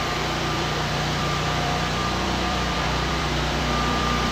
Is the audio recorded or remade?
remade